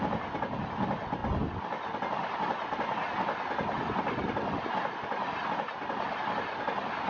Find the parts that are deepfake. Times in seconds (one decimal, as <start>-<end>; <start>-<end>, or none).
none